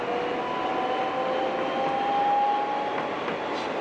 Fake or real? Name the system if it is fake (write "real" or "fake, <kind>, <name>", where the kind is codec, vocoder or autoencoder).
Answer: real